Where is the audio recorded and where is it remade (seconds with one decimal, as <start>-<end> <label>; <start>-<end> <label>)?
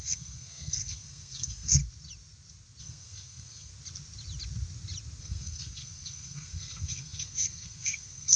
0.0-1.8 remade; 1.8-2.8 recorded; 2.8-3.7 remade; 3.7-5.2 recorded; 5.2-8.4 remade